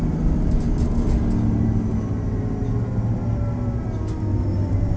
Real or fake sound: real